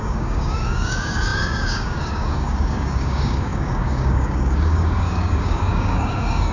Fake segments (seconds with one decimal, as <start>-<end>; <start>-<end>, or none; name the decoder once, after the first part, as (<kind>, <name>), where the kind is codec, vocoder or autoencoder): 0.0-6.5 (codec, DAC)